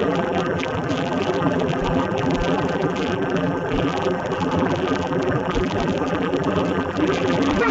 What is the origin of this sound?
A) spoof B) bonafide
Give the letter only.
A